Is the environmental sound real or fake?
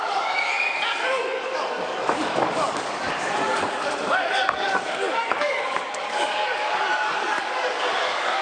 fake